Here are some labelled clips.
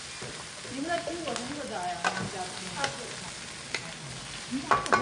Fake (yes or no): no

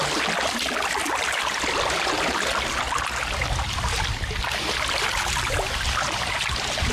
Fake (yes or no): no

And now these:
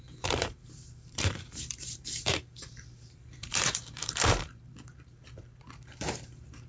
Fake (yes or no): yes